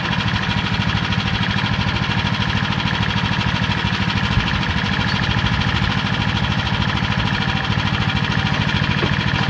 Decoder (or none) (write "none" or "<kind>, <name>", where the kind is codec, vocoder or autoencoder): none